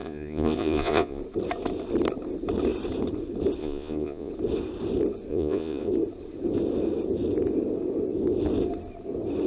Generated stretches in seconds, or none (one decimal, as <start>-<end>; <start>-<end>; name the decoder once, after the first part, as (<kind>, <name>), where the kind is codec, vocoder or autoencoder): 0.0-1.2 (vocoder, Vocos); 3.6-4.3; 5.3-5.9